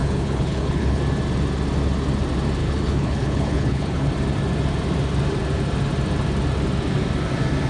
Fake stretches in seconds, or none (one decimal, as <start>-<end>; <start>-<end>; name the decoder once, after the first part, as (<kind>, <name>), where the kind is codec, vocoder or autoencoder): 0.0-1.0 (codec, HILCodec); 2.6-4.1